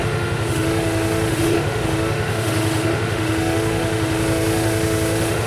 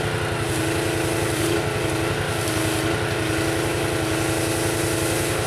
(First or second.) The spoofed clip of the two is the first